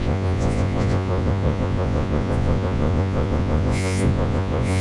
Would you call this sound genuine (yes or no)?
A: no